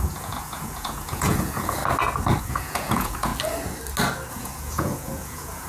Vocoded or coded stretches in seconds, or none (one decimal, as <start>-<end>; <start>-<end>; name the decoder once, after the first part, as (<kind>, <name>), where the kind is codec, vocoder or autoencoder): 0.0-1.8 (vocoder, Vocos); 2.4-3.3; 4.3-5.7